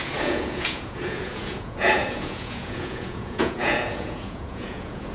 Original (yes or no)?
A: no